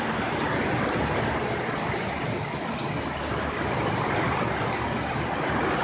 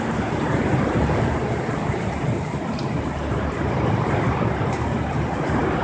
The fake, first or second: second